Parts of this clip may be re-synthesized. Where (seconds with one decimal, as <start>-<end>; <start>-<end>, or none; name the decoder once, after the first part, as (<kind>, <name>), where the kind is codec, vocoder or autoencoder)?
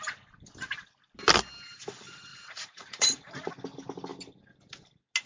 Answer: 2.3-3.5 (vocoder, Vocos)